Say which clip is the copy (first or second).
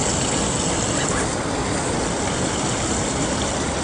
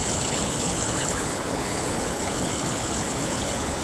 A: second